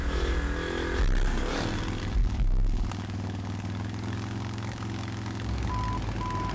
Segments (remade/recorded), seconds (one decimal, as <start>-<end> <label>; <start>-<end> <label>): 0.0-2.2 recorded; 2.2-5.7 remade; 5.7-6.5 recorded